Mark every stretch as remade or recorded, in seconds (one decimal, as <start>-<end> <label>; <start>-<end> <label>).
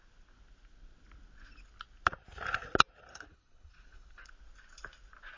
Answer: 0.0-3.1 recorded; 3.1-4.3 remade; 4.3-5.4 recorded